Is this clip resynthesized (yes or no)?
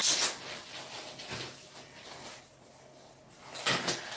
no